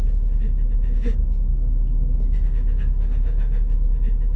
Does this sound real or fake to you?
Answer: real